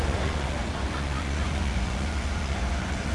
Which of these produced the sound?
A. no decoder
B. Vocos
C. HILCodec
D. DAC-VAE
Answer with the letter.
B